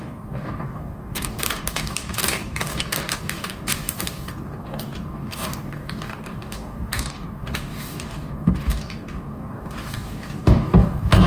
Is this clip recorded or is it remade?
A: remade